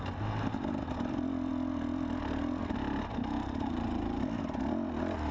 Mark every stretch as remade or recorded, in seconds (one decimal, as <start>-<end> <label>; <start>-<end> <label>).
0.0-5.3 recorded